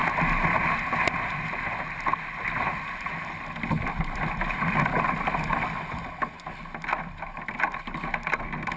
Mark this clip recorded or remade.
recorded